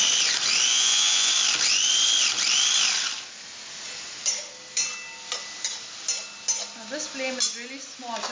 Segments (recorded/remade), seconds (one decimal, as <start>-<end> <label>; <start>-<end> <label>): 0.0-0.7 recorded; 0.7-1.3 remade; 1.3-8.3 recorded